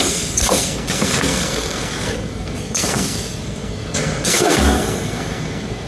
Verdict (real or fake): fake